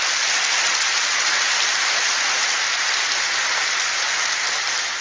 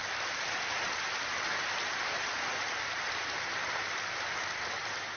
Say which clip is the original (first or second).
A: first